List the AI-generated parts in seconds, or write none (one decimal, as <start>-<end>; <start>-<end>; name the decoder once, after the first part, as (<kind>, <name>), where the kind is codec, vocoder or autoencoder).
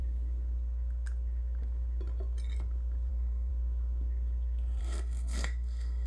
3.1-3.5 (codec, SNAC); 4.8-6.1